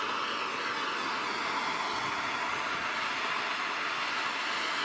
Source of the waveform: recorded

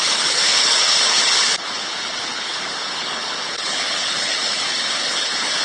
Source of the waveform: remade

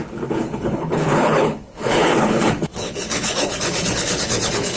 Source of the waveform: remade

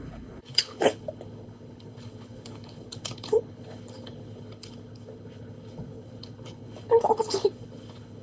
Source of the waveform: remade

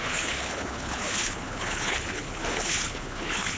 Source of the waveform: remade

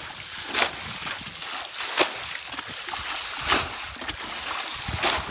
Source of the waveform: recorded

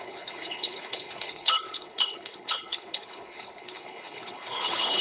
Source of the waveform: remade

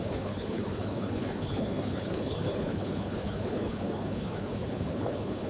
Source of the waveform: remade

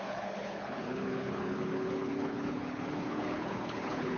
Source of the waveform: remade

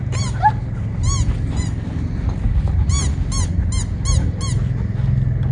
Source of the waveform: recorded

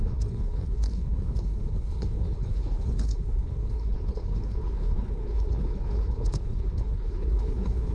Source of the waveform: remade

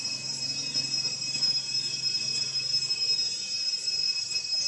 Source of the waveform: recorded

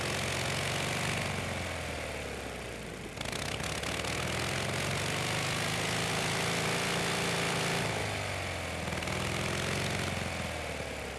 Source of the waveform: recorded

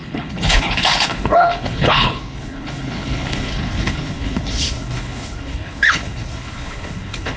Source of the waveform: remade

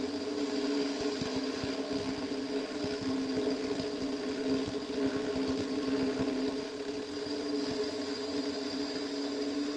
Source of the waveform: recorded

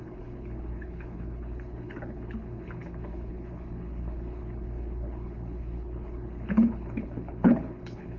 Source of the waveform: remade